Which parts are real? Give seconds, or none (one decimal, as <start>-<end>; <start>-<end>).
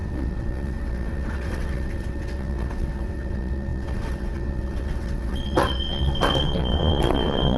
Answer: none